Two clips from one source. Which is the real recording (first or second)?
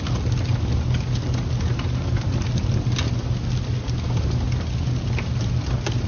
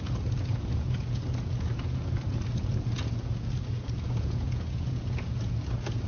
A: first